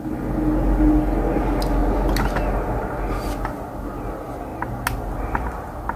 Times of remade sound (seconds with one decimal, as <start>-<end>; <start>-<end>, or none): none